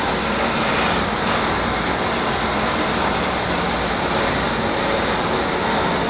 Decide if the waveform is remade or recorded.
recorded